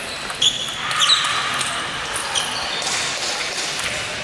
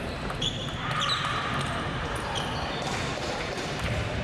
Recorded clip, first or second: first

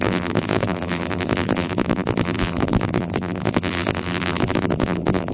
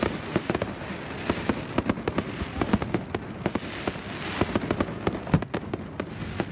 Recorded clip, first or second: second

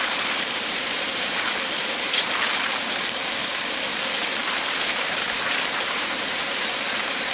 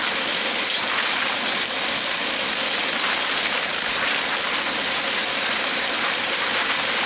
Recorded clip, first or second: second